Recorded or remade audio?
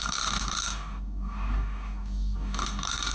remade